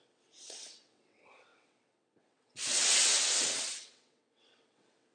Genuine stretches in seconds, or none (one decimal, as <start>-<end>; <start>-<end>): none